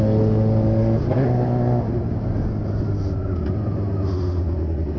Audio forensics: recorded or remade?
recorded